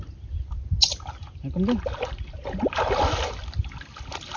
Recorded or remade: recorded